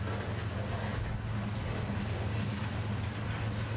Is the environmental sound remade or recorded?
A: recorded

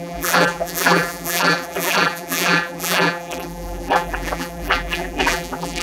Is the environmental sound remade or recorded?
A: remade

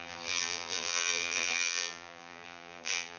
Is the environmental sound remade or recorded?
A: remade